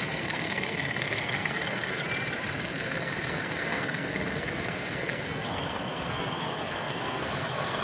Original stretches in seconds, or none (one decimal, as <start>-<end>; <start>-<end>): 2.0-2.6

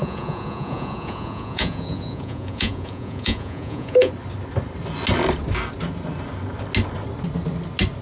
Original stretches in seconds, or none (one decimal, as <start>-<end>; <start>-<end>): 4.1-8.0